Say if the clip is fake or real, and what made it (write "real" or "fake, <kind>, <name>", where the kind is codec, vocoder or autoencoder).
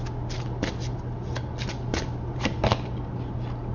real